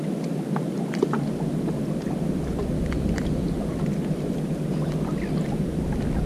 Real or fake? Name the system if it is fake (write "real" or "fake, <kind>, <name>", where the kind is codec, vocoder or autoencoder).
real